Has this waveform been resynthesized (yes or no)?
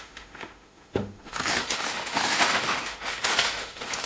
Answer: yes